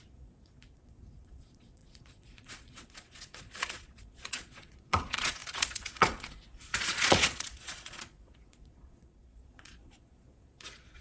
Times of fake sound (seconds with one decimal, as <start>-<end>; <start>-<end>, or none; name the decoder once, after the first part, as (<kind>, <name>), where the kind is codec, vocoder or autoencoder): 0.0-11.0 (vocoder, Vocos)